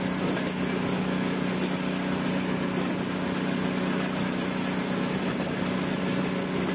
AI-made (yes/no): no